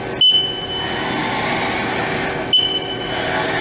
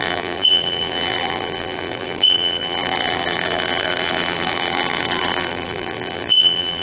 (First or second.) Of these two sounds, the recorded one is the first